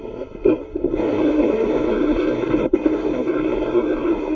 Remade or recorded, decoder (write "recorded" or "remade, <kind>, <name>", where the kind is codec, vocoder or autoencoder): remade, codec, SNAC